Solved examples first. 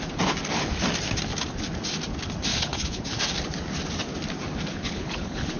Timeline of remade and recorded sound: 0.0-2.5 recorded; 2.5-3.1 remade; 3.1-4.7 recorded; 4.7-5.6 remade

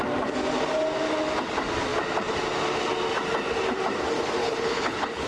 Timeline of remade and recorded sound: 0.0-4.4 recorded; 4.4-5.3 remade

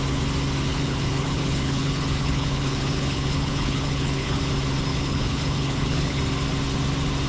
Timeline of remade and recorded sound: 0.0-0.7 recorded; 0.7-4.4 remade; 4.4-4.9 recorded; 4.9-6.2 remade; 6.2-7.3 recorded